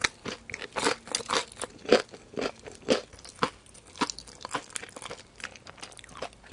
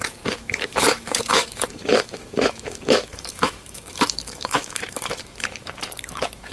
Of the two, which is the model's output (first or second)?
second